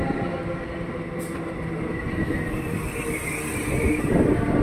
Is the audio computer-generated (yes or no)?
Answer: no